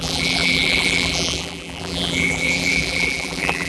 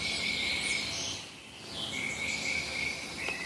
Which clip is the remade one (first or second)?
first